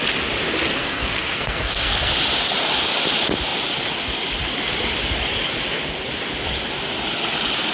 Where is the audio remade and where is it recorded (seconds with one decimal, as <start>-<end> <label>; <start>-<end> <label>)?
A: 0.0-0.8 recorded; 0.8-2.1 remade; 2.1-7.7 recorded